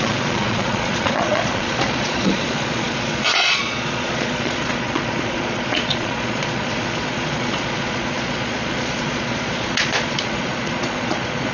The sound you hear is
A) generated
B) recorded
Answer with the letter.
A